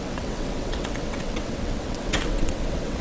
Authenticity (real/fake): fake